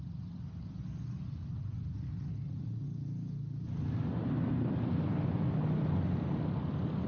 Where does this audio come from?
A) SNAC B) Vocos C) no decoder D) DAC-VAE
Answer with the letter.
C